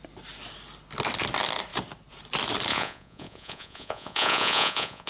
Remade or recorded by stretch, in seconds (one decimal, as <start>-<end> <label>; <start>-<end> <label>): 0.0-2.7 recorded; 2.7-5.1 remade